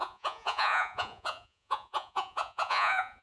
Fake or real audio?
fake